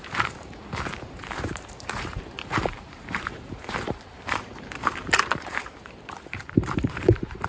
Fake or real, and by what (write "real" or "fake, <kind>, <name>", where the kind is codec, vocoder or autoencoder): fake, vocoder, BigVGAN v2